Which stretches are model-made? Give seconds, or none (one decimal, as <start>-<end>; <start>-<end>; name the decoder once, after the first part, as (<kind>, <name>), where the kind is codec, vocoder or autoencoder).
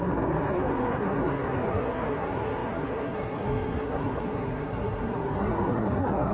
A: 0.0-6.3 (codec, SNAC)